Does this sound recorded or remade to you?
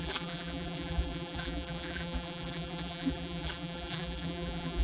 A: remade